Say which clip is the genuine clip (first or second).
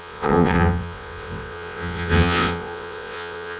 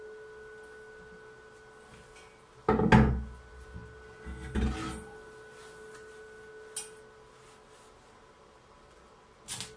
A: second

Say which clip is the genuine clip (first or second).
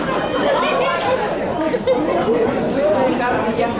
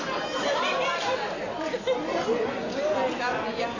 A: second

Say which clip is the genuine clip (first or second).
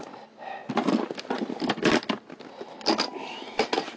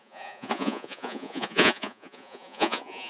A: first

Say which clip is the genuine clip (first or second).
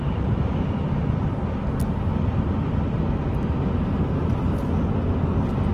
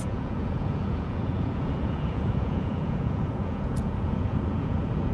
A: first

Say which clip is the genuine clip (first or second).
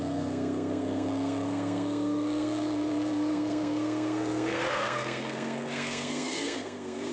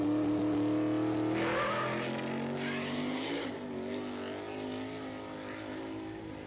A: second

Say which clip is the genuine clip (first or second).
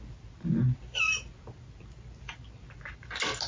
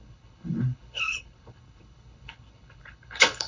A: first